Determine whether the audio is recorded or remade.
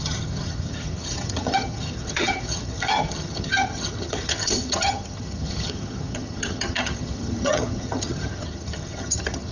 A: remade